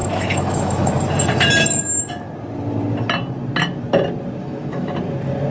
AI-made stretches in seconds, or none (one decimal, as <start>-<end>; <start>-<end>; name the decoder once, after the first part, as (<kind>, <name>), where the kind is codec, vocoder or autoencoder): 0.0-0.9 (autoencoder, DAC-VAE); 4.4-4.9